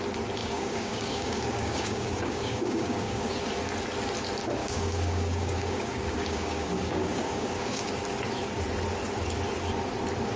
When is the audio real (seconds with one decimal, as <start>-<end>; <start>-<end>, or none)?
0.0-0.4; 3.4-4.6; 7.9-10.4

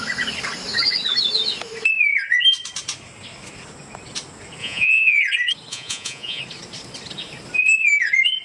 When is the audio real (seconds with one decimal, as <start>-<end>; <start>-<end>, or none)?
0.0-4.6; 5.2-5.7; 6.4-8.4